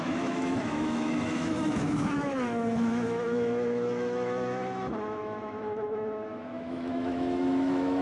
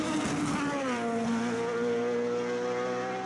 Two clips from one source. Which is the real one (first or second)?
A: second